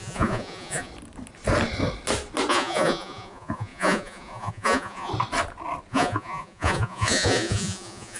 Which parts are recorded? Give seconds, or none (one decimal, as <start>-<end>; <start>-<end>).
0.9-2.5; 5.1-5.9